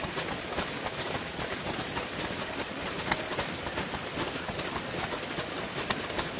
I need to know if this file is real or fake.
real